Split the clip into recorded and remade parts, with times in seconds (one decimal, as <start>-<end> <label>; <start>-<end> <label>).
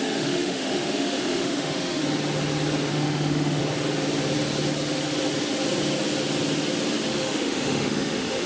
0.0-2.0 remade; 2.0-2.9 recorded; 2.9-3.6 remade; 3.6-7.1 recorded; 7.1-8.5 remade